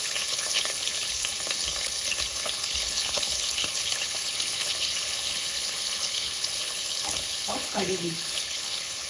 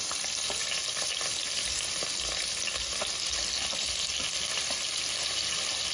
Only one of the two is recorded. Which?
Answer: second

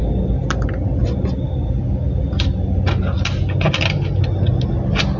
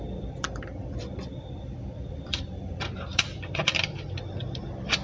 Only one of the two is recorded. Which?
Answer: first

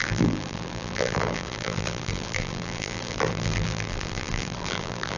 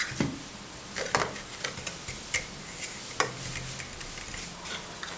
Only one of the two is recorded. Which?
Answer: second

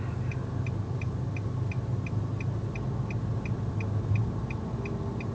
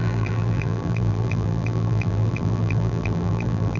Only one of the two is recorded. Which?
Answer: first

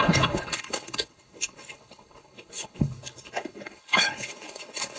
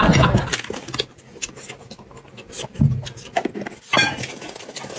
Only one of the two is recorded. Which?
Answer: second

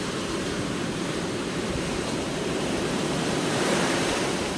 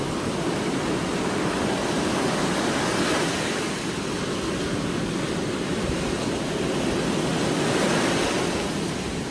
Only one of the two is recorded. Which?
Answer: second